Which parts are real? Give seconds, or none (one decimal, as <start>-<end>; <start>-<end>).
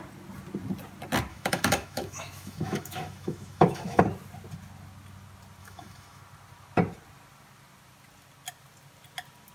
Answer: 0.0-1.3; 4.0-5.6; 6.2-9.5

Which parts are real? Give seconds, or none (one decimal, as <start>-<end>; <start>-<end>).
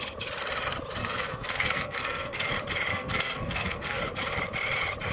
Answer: 0.0-1.0; 2.5-2.9; 4.0-5.1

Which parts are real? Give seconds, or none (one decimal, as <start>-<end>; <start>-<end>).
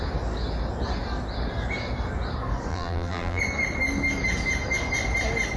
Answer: 0.0-2.7; 3.4-5.6